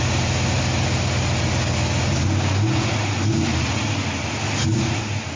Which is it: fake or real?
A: real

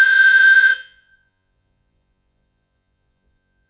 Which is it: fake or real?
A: fake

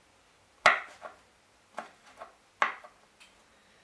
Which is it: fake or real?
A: real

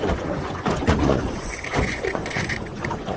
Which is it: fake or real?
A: fake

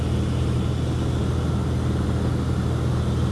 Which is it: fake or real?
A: real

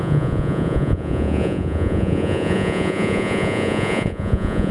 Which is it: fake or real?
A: fake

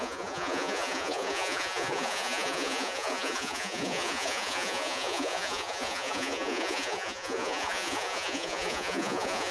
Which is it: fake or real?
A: fake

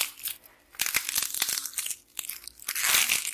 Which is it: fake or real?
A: real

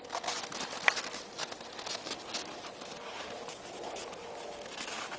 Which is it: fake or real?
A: real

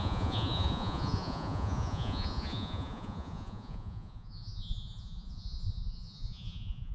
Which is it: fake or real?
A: fake